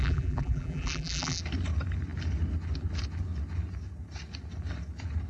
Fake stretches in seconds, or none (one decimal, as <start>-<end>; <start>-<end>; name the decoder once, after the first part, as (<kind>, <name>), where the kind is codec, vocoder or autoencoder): 0.0-1.4 (vocoder, BigVGAN v2)